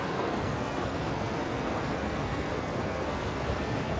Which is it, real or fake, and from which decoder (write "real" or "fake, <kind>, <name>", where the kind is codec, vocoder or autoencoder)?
fake, codec, SNAC